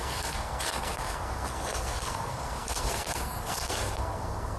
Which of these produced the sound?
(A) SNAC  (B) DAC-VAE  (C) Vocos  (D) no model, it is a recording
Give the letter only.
A